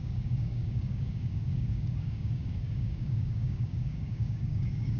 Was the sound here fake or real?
fake